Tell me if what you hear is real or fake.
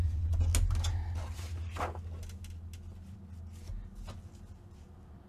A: real